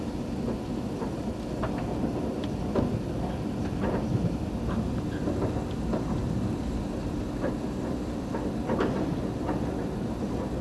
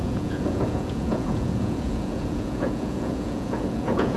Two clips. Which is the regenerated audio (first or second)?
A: second